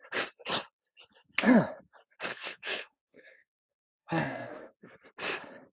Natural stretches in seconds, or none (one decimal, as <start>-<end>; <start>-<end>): 0.0-2.3; 4.9-5.7